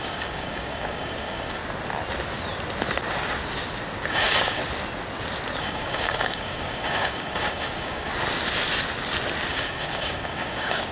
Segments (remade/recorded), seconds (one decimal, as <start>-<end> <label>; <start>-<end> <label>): 0.0-1.6 remade; 1.6-4.1 recorded; 4.1-4.6 remade; 4.6-5.6 recorded; 5.6-8.1 remade; 8.1-9.5 recorded; 9.5-10.9 remade

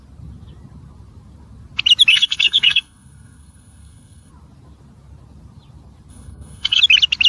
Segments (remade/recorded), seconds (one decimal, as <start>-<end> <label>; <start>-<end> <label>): 0.0-2.1 recorded; 2.1-4.3 remade; 4.3-6.1 recorded; 6.1-6.8 remade; 6.8-7.3 recorded

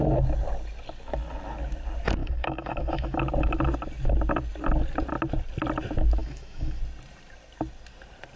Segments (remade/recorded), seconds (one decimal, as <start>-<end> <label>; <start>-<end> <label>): 0.0-2.2 recorded; 2.2-3.2 remade; 3.2-6.2 recorded; 6.2-6.8 remade; 6.8-8.4 recorded